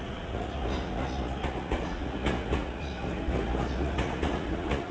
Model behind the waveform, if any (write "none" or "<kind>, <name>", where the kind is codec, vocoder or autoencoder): vocoder, Vocos